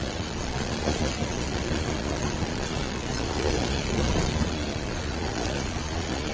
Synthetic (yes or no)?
yes